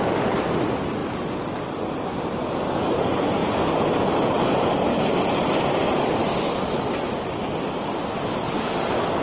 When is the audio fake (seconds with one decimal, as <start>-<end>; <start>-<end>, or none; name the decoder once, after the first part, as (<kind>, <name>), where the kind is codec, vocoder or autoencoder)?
none